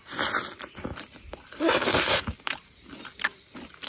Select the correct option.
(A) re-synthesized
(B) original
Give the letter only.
B